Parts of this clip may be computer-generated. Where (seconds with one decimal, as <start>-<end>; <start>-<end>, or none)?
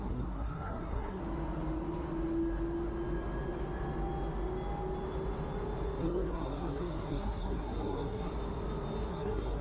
0.0-1.2; 6.0-8.3; 9.1-9.6